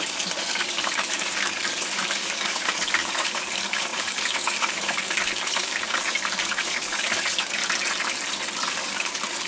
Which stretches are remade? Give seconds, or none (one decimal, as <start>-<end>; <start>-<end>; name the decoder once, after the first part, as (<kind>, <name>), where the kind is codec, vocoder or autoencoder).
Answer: 0.0-7.6 (codec, DAC); 8.7-9.5